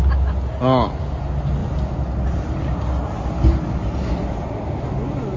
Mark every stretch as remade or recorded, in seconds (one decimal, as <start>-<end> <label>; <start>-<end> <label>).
0.0-5.4 recorded